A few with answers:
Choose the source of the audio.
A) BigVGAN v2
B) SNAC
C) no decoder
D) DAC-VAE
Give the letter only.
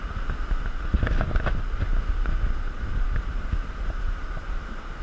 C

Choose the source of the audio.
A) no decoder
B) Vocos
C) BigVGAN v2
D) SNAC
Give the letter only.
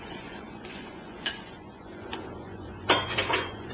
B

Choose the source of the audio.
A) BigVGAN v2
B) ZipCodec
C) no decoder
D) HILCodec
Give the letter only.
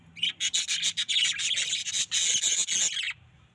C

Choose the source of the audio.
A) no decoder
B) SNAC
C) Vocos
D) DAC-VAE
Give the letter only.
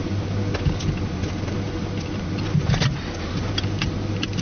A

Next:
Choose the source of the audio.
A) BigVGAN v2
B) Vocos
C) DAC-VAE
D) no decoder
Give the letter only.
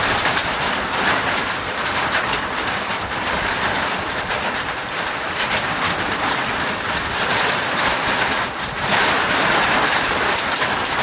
A